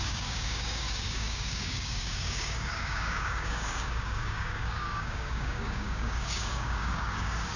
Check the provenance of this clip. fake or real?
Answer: fake